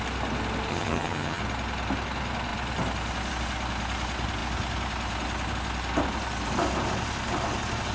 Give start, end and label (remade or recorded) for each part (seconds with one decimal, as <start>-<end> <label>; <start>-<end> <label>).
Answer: 0.0-0.7 recorded; 0.7-1.4 remade; 1.4-7.9 recorded